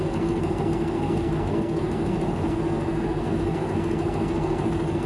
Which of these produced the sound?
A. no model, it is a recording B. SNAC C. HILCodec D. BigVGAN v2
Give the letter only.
B